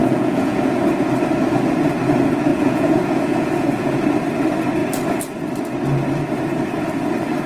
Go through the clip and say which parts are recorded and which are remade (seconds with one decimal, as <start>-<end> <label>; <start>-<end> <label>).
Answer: 0.0-0.6 remade; 0.6-2.5 recorded; 2.5-4.0 remade; 4.0-7.5 recorded